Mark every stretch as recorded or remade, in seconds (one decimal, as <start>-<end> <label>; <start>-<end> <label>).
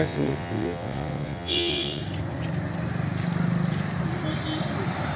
0.0-2.0 remade; 2.0-5.2 recorded